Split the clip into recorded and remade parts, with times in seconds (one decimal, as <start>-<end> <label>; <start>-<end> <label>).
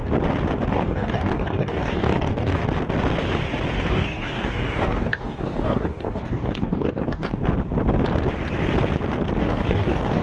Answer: 0.0-0.7 recorded; 0.7-2.6 remade; 2.6-3.9 recorded; 3.9-7.4 remade; 7.4-9.4 recorded; 9.4-10.2 remade